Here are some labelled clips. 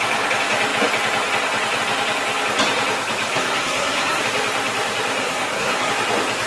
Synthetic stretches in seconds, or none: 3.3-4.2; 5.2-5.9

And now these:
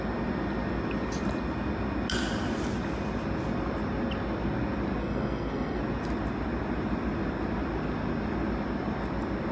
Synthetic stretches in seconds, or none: 5.0-5.8

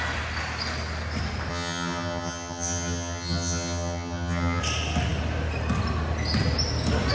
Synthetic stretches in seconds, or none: 1.5-4.6

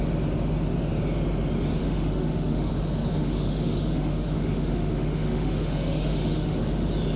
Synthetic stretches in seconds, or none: 1.8-2.7; 3.1-6.6